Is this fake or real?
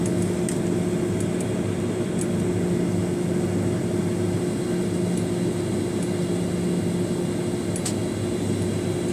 real